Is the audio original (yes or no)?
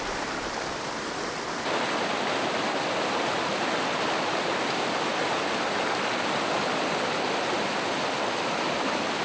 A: yes